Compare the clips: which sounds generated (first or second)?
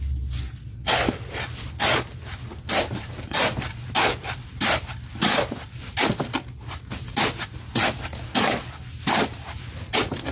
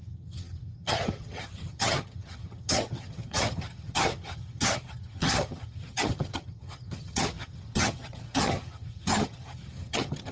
second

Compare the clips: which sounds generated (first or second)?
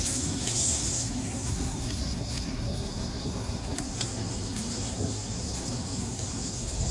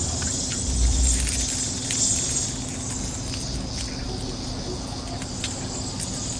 first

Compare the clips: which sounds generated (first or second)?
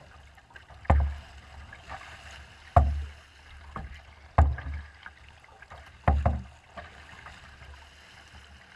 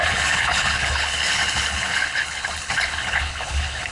second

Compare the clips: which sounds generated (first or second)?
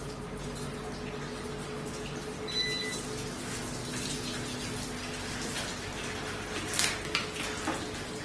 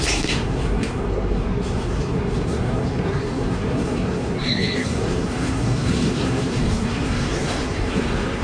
second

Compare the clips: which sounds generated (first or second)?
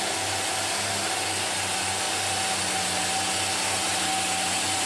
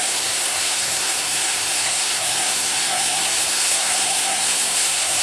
second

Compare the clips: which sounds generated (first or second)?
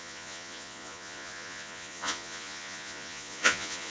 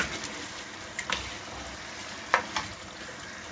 first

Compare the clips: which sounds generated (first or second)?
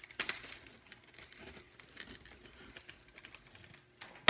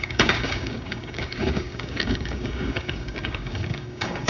second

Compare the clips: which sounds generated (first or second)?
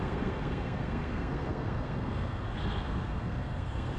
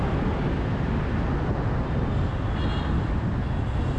first